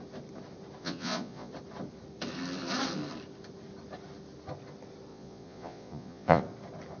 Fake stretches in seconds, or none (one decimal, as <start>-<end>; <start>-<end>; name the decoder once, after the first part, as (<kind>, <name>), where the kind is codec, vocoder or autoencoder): 0.8-1.5 (vocoder, Vocos); 5.1-6.4